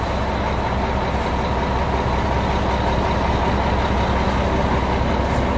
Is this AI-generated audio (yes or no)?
no